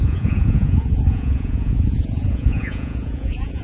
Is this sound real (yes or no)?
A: no